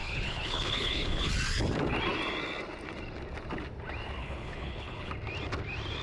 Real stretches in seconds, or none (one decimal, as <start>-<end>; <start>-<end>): 1.3-4.2; 5.1-6.0